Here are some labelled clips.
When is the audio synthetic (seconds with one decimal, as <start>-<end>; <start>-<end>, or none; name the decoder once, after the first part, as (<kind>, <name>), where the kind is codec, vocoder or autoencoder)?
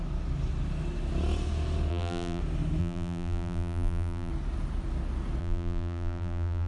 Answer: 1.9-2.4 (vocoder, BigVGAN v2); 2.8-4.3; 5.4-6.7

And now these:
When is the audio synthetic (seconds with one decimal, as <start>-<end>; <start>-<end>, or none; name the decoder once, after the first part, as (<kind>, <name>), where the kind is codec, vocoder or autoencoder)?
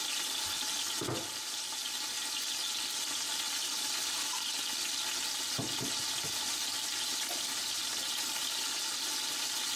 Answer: none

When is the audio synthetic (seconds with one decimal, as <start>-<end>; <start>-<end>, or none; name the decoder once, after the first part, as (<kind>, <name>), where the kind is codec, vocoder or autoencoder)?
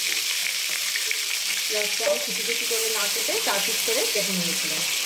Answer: 0.0-5.1 (vocoder, BigVGAN v2)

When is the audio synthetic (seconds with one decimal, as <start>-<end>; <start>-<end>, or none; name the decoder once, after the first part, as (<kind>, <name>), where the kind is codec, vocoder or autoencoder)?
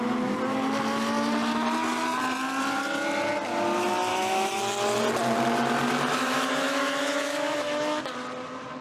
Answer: 4.1-4.6 (autoencoder, DAC-VAE); 6.1-8.0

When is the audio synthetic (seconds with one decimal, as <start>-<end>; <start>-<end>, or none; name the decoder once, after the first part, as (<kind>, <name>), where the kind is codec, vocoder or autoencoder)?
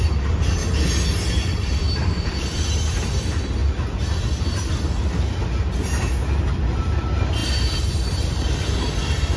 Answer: 0.0-0.6 (vocoder, BigVGAN v2); 1.3-3.6; 6.5-9.4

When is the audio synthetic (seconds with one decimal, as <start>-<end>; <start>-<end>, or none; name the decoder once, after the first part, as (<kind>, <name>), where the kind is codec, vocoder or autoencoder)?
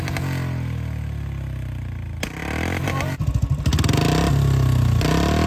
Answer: none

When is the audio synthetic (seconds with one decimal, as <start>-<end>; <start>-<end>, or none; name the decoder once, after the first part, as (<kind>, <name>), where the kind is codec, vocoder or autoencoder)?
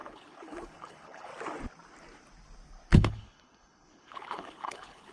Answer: 0.0-1.3 (codec, HILCodec); 2.9-5.1